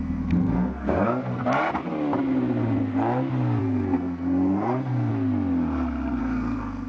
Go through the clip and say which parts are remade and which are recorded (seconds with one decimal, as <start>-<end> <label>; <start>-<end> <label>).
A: 0.0-1.4 remade; 1.4-3.6 recorded; 3.6-5.1 remade; 5.1-6.2 recorded; 6.2-6.9 remade